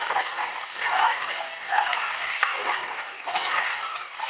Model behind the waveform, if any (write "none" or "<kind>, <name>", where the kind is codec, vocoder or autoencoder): codec, DAC